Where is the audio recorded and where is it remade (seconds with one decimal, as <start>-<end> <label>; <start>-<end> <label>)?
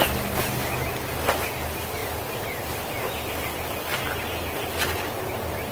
0.0-2.0 recorded; 2.0-2.6 remade; 2.6-5.7 recorded